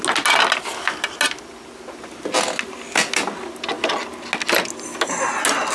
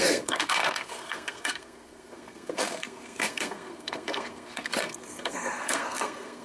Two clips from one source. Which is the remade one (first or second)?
second